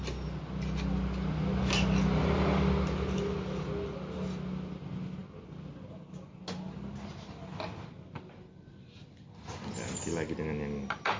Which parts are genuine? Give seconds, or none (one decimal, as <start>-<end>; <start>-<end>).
0.0-11.2